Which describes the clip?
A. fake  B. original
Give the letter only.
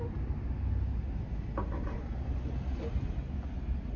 B